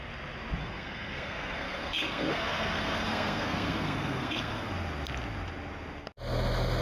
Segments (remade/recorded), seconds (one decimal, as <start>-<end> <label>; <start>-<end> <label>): 0.0-0.6 recorded; 0.6-4.7 remade; 4.7-6.8 recorded